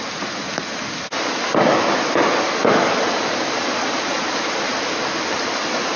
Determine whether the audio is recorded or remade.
recorded